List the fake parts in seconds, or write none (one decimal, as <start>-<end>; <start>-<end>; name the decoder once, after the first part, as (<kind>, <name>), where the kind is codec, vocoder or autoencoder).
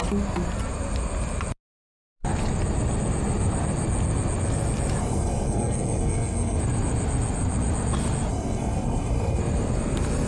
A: 5.0-6.6 (codec, SNAC); 8.3-9.4